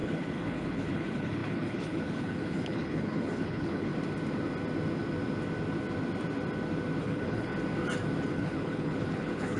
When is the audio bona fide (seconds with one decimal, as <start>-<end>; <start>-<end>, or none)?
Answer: 3.9-7.0; 7.5-8.3